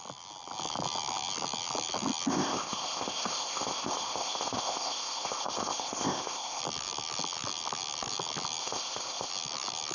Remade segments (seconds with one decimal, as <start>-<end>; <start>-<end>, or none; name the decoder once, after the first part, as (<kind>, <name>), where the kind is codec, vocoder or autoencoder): 2.3-6.6 (codec, ZipCodec); 8.6-9.3